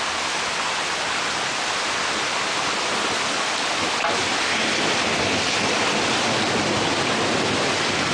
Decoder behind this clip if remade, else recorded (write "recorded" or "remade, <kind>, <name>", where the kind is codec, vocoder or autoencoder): recorded